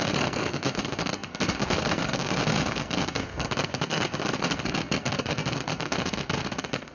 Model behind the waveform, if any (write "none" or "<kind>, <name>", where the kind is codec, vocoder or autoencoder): codec, SNAC